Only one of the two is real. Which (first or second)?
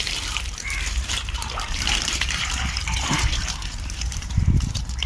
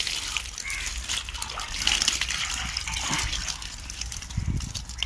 second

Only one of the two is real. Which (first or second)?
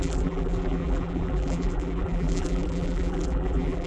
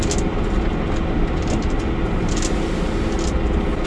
second